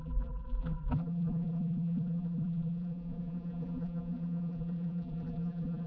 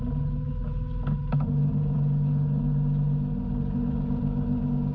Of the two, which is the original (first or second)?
second